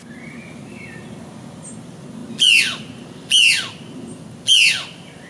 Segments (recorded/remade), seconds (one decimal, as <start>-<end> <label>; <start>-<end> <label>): 0.0-5.3 recorded